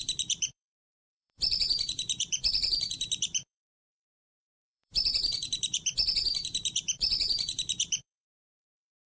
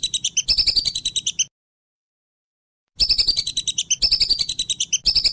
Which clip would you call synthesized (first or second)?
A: first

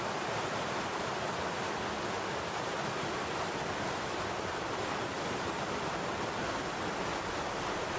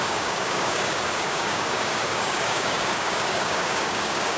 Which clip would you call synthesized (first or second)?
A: second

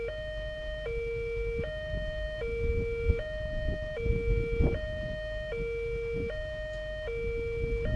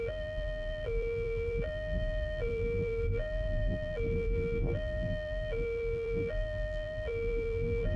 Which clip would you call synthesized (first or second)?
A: second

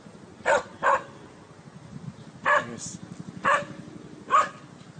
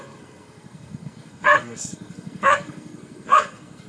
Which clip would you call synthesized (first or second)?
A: second